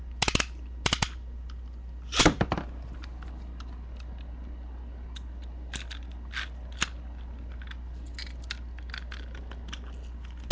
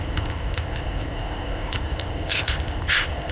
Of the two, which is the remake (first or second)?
second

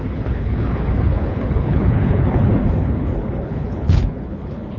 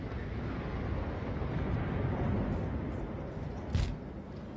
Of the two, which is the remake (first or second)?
first